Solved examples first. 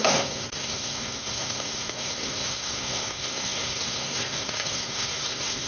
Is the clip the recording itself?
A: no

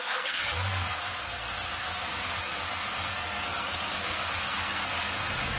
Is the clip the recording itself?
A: no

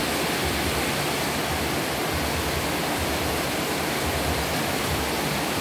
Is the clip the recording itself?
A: yes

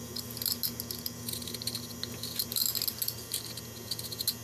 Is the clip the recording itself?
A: yes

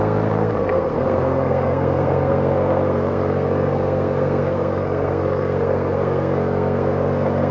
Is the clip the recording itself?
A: no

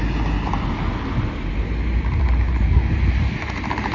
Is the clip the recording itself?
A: yes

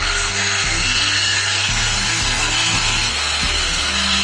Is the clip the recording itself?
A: no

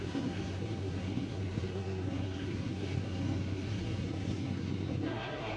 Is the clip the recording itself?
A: no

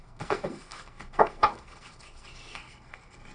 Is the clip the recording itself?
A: no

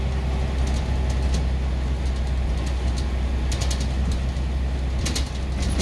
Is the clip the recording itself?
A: yes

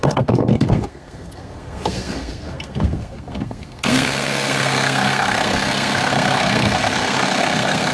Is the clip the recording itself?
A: no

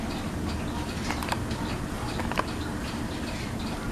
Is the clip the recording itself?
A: yes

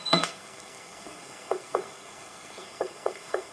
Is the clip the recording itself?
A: no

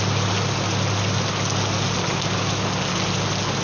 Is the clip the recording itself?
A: yes